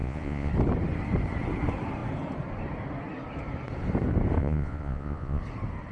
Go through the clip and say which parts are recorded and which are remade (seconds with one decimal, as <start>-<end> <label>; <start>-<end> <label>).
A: 0.0-0.5 remade; 0.5-4.4 recorded; 4.4-5.4 remade; 5.4-5.9 recorded

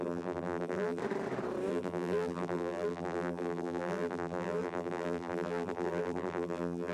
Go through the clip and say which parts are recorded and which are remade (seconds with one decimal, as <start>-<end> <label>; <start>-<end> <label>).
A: 0.0-1.0 remade; 1.0-1.7 recorded; 1.7-6.9 remade

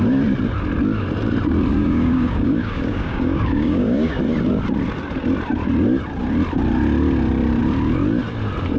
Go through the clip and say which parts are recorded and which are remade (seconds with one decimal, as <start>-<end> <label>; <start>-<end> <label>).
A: 0.0-1.7 recorded; 1.7-4.2 remade; 4.2-8.8 recorded

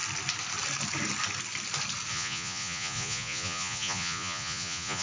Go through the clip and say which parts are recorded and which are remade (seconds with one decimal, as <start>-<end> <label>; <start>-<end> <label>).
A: 0.0-2.1 recorded; 2.1-5.0 remade

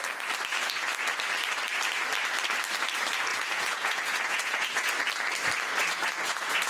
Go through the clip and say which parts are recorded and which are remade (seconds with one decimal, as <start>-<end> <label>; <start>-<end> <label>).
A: 0.0-3.3 recorded; 3.3-4.9 remade; 4.9-5.8 recorded; 5.8-6.7 remade

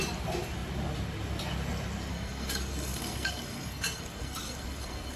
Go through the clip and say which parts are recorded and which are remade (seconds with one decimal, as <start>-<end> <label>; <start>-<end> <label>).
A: 0.0-2.1 recorded; 2.1-5.2 remade

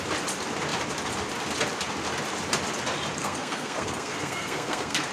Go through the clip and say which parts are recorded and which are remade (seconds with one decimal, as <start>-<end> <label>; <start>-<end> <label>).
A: 0.0-3.2 recorded; 3.2-5.1 remade

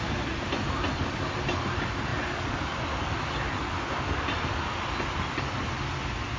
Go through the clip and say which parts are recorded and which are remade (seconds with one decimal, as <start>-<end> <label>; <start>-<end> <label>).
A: 0.0-6.4 recorded